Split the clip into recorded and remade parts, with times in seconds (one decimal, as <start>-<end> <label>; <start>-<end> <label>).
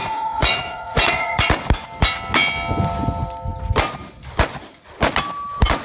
0.0-1.5 remade; 1.5-5.8 recorded